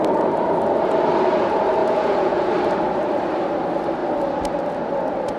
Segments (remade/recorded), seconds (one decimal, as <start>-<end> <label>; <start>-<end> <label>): 0.0-1.8 recorded; 1.8-2.5 remade; 2.5-5.4 recorded